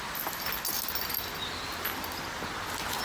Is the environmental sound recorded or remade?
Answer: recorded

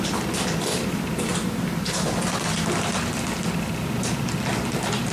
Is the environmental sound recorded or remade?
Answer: recorded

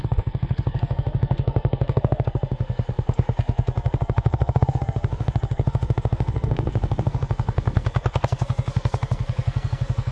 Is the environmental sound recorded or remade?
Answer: remade